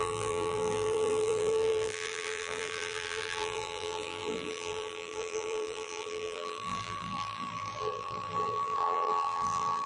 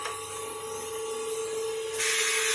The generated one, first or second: first